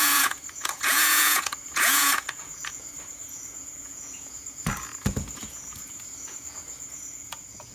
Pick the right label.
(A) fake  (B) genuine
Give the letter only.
A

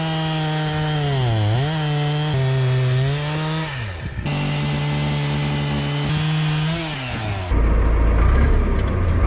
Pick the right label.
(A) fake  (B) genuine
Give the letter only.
B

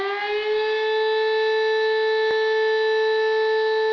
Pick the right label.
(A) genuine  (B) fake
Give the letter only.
A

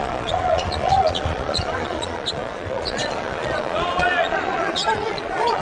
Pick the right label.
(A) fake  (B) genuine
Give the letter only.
A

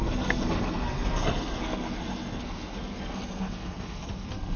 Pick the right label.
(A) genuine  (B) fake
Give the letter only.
B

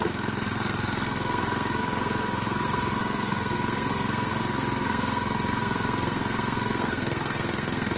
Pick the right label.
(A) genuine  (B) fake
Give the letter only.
B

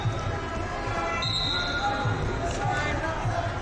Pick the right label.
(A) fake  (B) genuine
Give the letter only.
B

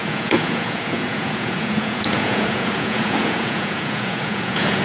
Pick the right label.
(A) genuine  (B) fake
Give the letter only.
B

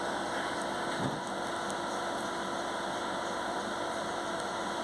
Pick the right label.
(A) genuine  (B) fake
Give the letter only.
A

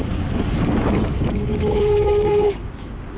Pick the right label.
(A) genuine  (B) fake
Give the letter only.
B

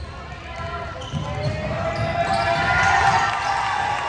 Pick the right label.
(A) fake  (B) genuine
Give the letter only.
B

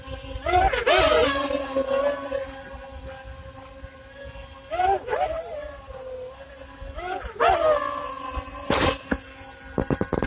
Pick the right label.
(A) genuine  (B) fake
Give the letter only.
A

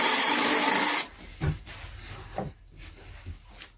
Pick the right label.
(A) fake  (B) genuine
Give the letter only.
B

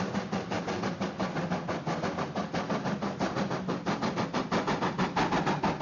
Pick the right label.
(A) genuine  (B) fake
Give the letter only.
A